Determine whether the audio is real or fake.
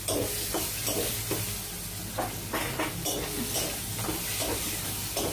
real